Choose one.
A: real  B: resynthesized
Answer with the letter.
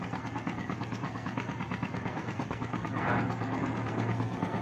B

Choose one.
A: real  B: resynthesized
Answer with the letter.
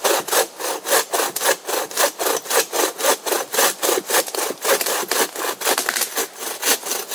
A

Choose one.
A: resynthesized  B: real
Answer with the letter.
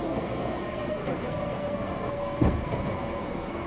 A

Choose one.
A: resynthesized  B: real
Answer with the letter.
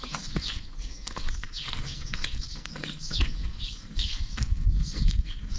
A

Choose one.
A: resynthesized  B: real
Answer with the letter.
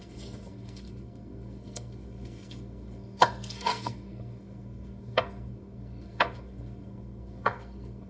A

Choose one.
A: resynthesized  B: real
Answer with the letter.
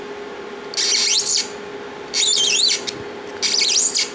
B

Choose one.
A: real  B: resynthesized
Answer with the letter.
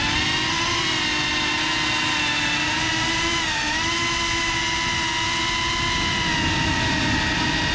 A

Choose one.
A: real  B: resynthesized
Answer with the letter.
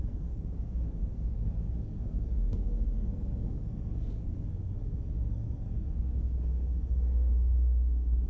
B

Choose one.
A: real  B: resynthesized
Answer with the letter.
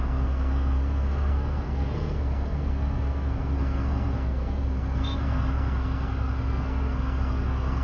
B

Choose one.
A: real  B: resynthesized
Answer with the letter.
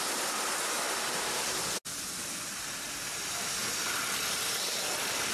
A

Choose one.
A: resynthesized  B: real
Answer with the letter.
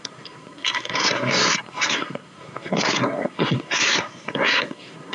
A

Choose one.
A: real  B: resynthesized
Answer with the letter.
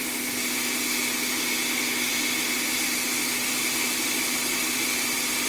A